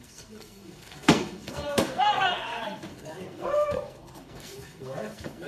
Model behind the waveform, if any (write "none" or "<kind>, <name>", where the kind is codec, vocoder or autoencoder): codec, SNAC